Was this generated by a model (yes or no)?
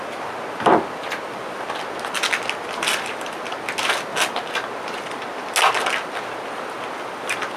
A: no